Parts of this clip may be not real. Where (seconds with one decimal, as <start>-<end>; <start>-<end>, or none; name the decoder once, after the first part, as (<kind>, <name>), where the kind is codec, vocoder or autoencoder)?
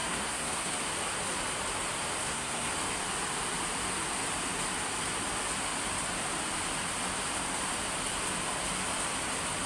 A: 0.0-0.8 (codec, SNAC); 2.2-2.7